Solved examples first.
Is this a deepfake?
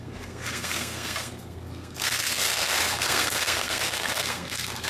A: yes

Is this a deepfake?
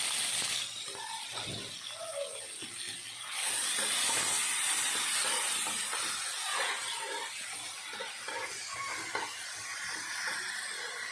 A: no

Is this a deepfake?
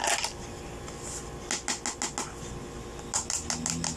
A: no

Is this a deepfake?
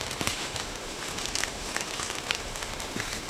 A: yes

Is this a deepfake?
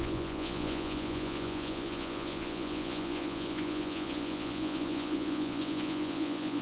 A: yes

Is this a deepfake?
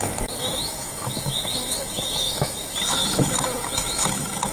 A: yes